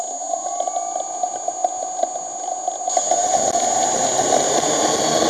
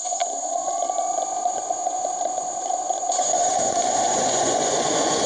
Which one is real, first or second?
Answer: first